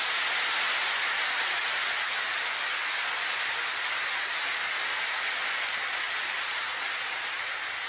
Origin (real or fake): real